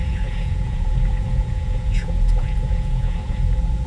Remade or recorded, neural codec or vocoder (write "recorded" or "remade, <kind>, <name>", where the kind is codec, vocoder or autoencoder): remade, vocoder, Vocos